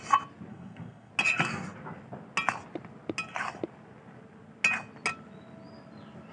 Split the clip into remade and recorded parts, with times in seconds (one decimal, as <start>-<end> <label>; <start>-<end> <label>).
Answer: 0.0-0.5 recorded; 0.5-1.1 remade; 1.1-6.3 recorded